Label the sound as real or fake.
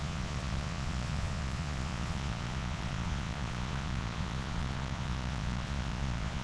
fake